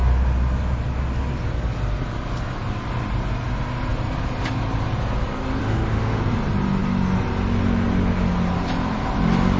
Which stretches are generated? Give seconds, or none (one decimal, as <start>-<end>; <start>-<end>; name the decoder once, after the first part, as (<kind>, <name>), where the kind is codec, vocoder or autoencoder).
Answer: 5.6-6.2 (autoencoder, DAC-VAE)